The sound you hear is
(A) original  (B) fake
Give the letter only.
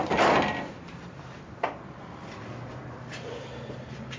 B